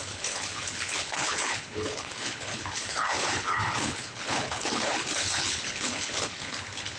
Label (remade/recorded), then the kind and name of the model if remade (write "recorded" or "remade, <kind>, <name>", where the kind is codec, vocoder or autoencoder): remade, codec, HILCodec